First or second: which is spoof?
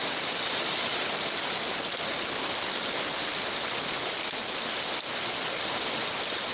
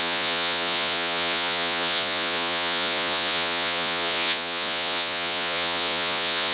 second